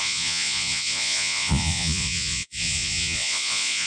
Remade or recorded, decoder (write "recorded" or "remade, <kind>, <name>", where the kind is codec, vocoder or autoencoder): remade, vocoder, Vocos